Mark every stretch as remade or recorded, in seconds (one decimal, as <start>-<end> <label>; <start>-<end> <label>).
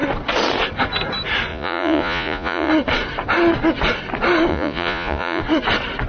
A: 0.0-1.5 recorded; 1.5-2.7 remade; 2.7-4.5 recorded; 4.5-5.4 remade; 5.4-6.1 recorded